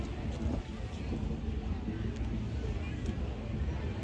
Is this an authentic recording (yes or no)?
yes